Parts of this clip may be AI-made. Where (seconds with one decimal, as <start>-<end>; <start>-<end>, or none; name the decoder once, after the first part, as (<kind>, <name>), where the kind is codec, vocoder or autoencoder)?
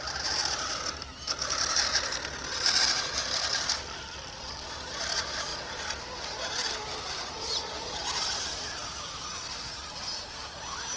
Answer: none